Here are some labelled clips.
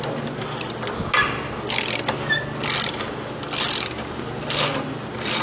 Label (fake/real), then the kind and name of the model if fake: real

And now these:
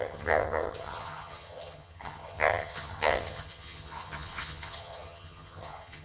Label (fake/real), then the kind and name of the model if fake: fake, vocoder, HiFi-GAN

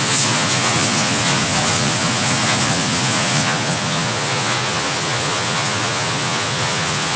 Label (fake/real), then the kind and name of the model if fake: fake, vocoder, Vocos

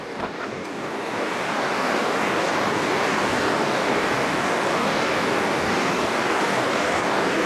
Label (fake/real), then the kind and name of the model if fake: fake, codec, DAC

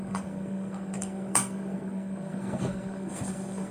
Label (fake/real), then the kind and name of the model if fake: fake, codec, SNAC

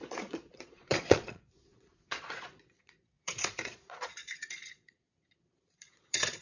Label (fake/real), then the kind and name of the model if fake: fake, vocoder, Vocos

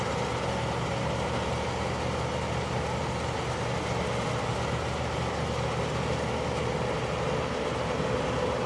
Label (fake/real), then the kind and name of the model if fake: real